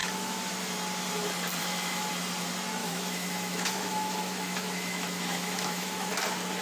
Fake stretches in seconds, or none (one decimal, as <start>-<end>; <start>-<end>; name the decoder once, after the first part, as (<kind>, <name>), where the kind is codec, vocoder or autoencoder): 0.0-0.5 (autoencoder, DAC-VAE); 1.6-2.1; 2.8-6.1